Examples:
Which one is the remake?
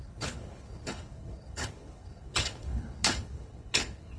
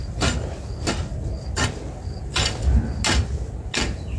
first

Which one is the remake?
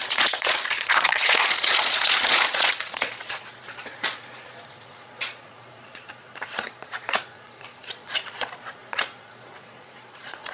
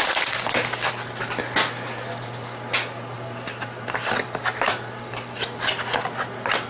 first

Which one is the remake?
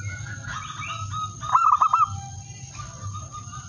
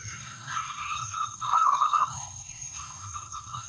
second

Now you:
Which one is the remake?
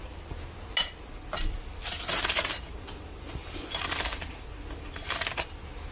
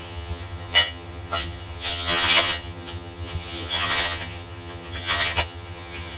second